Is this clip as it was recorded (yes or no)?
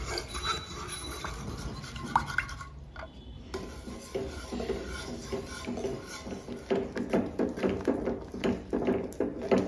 yes